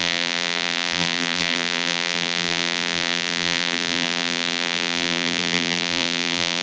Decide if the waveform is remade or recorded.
remade